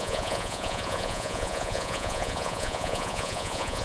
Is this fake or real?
fake